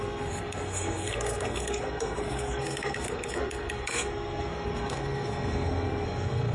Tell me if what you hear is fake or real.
fake